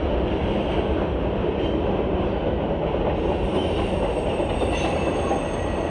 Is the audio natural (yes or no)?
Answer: yes